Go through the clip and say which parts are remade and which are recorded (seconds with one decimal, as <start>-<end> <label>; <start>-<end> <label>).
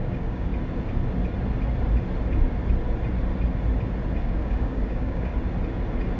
0.0-0.5 remade; 0.5-4.2 recorded; 4.2-5.3 remade; 5.3-6.2 recorded